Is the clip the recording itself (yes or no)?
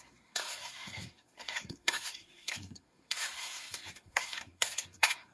no